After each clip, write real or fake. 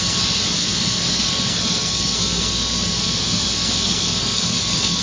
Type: fake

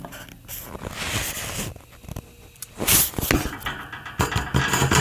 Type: real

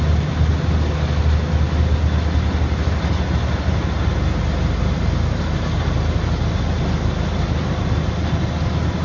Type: real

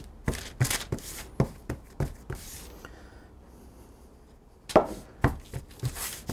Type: real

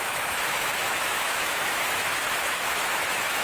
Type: fake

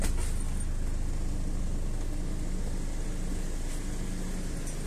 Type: real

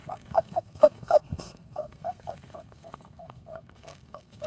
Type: fake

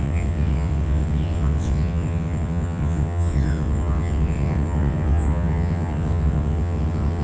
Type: fake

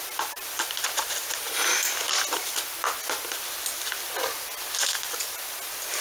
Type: real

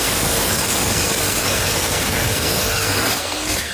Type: fake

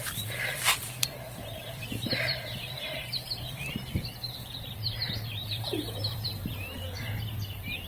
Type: fake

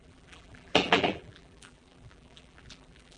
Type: fake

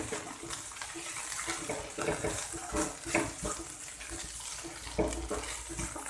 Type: real